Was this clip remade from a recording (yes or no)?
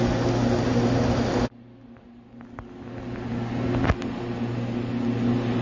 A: no